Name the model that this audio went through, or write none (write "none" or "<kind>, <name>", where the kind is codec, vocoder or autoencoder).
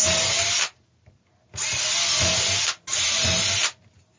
none